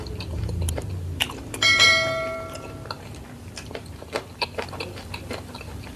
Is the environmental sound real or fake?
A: fake